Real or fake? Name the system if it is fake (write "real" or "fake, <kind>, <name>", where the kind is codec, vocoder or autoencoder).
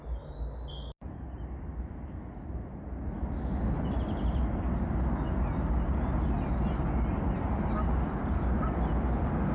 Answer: real